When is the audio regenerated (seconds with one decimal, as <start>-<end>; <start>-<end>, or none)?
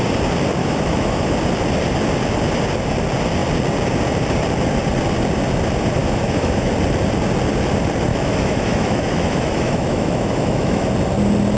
0.6-1.3; 6.0-6.7; 8.1-10.9